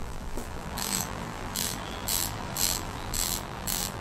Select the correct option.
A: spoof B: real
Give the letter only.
A